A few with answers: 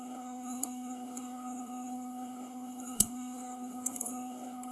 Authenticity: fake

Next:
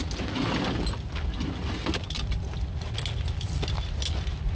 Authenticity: real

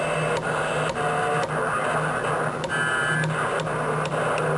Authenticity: real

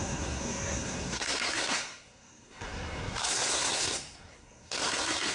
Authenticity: fake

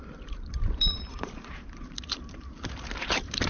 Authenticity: fake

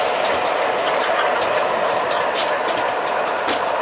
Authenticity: real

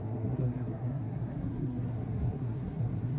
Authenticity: fake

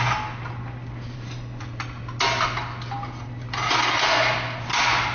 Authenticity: real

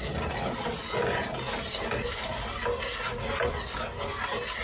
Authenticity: real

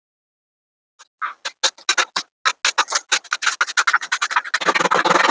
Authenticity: real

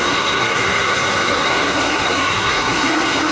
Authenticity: fake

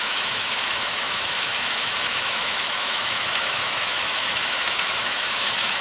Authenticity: fake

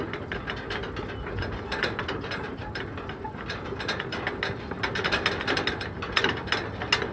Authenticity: real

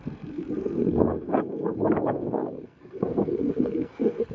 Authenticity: fake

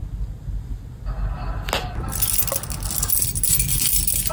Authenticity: real